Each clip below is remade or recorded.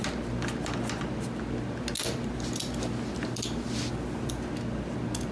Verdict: recorded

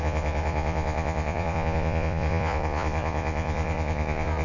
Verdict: remade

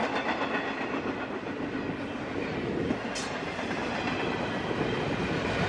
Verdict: recorded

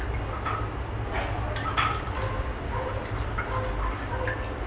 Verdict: recorded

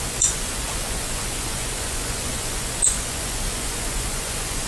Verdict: remade